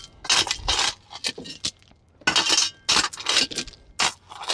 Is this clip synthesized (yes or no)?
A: no